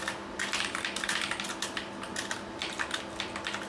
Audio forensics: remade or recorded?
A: recorded